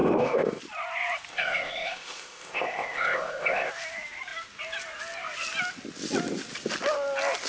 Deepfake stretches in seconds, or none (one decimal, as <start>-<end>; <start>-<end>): 0.0-0.6; 1.3-3.7

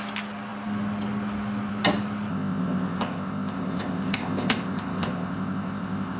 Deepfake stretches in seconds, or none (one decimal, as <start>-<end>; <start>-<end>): 2.3-6.2

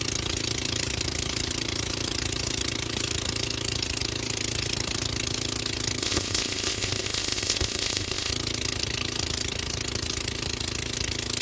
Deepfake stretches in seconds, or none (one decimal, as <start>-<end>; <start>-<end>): 6.0-8.3